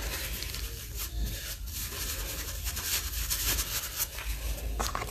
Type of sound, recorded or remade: recorded